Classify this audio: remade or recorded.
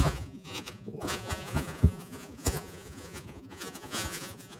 remade